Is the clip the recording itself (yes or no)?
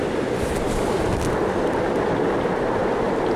yes